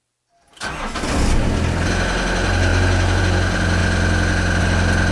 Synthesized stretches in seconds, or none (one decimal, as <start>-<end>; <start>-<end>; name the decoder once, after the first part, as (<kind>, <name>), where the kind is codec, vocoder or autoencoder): none